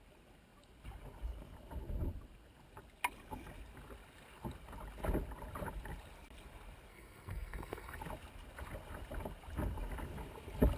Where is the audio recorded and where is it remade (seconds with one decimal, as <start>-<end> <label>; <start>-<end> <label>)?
0.0-6.9 recorded; 6.9-8.0 remade; 8.0-10.8 recorded